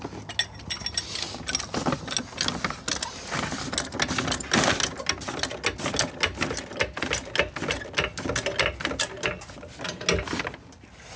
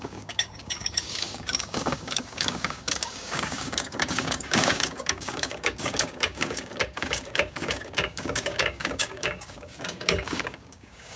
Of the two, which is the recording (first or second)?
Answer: first